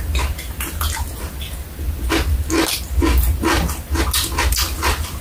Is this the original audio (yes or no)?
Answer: yes